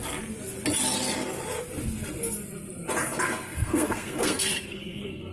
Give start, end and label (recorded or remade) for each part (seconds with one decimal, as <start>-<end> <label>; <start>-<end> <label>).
0.0-3.0 recorded; 3.0-5.3 remade